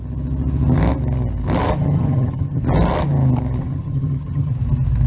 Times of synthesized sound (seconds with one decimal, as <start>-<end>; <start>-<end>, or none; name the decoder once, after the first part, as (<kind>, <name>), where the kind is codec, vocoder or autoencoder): 1.8-2.6 (vocoder, HiFi-GAN); 3.6-4.5